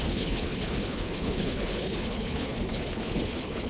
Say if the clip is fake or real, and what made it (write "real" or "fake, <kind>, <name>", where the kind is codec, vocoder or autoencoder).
fake, codec, HILCodec